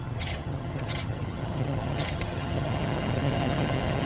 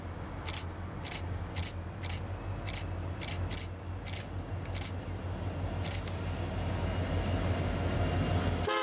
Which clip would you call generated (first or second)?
first